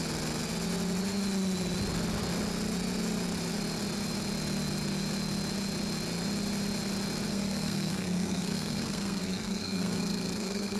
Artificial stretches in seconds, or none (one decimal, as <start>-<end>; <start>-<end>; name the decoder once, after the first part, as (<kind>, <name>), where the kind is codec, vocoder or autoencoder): 7.3-10.8 (codec, SNAC)